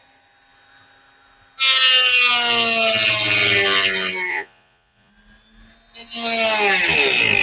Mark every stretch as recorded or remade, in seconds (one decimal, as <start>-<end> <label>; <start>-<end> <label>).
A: 0.0-4.3 recorded; 4.3-5.1 remade; 5.1-7.4 recorded